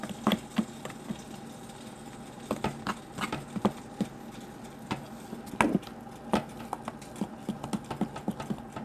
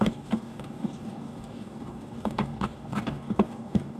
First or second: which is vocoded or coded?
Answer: second